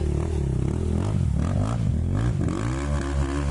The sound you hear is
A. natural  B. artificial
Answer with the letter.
A